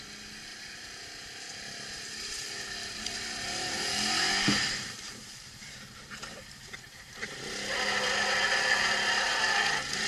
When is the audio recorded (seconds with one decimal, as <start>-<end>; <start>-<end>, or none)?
0.0-0.5; 2.6-4.2; 7.4-10.1